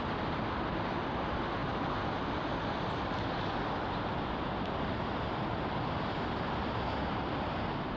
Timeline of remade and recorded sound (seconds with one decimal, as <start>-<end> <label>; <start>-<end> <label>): 0.0-8.0 recorded